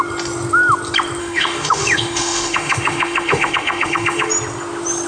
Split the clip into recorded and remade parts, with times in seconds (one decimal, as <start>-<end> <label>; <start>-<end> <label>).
0.0-1.2 recorded; 1.2-4.3 remade; 4.3-5.1 recorded